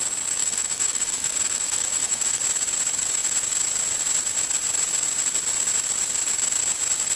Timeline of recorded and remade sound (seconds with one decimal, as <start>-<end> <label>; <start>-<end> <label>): 0.0-0.4 recorded; 0.4-2.4 remade; 2.4-7.2 recorded